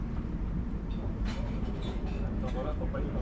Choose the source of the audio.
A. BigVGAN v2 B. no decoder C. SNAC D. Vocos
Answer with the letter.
A